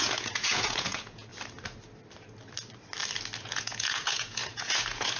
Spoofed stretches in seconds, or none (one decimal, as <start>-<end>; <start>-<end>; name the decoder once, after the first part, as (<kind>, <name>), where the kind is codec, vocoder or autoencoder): 0.0-1.3 (vocoder, Vocos); 3.4-5.2